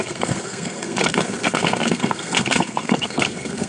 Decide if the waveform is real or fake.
fake